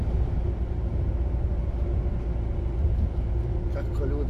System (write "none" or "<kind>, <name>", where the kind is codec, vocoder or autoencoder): none